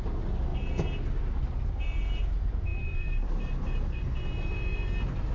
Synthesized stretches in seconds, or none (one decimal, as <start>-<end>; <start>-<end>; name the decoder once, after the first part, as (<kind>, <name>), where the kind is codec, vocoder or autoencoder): 2.7-4.0 (vocoder, BigVGAN v2)